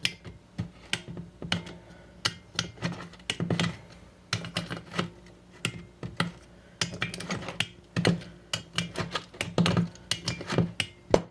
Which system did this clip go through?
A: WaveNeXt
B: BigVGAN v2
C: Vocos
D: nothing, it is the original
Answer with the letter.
D